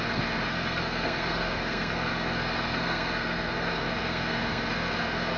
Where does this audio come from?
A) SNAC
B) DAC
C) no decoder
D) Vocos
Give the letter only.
A